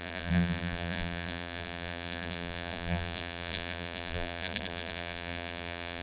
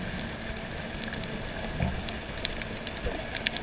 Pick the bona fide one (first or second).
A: second